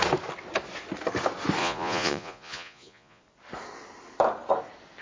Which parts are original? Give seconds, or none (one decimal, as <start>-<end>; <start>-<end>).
0.0-1.6; 3.2-5.0